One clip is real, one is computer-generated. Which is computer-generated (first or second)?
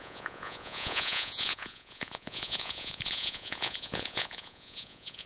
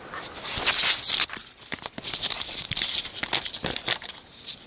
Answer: first